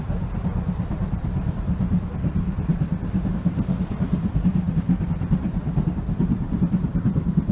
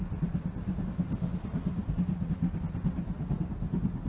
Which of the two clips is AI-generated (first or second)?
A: first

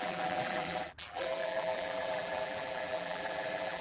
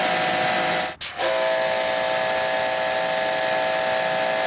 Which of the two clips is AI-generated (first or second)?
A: first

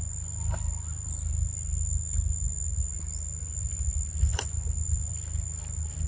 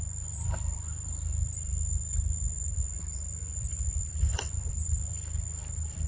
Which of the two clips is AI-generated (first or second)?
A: second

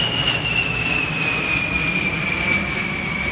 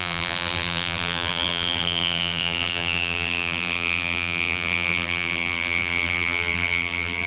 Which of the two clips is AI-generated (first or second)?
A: second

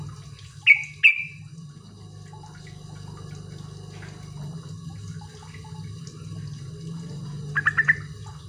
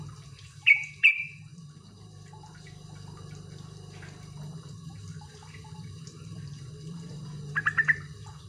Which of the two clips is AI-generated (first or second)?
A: second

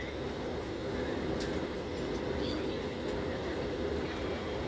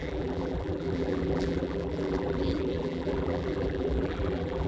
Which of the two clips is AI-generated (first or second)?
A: second